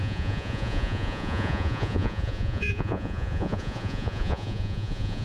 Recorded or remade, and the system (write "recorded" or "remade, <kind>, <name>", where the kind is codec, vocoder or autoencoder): remade, vocoder, Vocos